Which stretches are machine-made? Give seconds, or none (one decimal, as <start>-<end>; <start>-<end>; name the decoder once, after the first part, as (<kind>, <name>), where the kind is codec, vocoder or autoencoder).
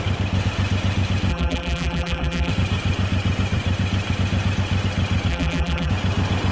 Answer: 1.3-2.5 (vocoder, BigVGAN v2); 5.3-5.9